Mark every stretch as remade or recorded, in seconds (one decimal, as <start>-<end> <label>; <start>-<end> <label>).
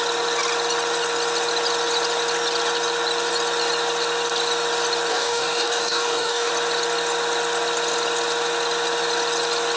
0.0-5.1 recorded; 5.1-6.5 remade; 6.5-9.8 recorded